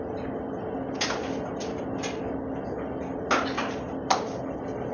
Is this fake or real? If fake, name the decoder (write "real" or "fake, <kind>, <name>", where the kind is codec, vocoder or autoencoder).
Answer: real